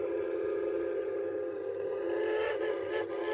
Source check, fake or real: fake